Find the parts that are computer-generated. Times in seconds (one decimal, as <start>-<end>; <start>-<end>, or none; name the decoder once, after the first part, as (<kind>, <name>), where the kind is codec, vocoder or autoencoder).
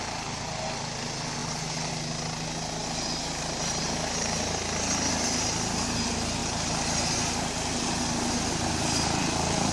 none